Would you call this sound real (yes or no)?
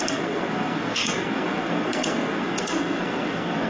no